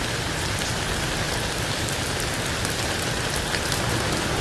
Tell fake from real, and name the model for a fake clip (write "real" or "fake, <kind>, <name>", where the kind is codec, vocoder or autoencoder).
real